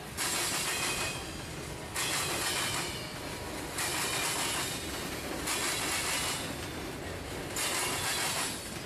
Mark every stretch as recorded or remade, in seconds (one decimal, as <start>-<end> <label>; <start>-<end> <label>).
0.0-8.9 recorded